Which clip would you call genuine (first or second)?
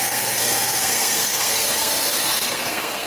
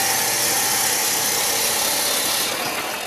second